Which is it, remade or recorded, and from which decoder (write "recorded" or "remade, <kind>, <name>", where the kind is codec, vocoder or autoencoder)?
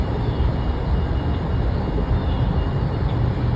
remade, vocoder, BigVGAN v2